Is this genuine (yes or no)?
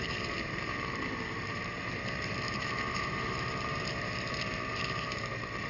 no